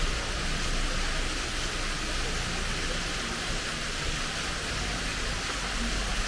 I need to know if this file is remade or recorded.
recorded